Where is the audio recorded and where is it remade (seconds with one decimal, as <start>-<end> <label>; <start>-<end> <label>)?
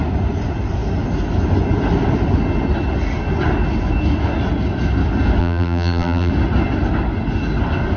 0.0-5.4 recorded; 5.4-6.3 remade; 6.3-8.0 recorded